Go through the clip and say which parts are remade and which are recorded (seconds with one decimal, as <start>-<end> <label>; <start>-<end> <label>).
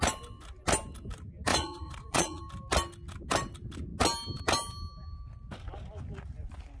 0.0-1.5 recorded; 1.5-2.4 remade; 2.4-6.8 recorded